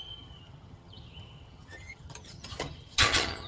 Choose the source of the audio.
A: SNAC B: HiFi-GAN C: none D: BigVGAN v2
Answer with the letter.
B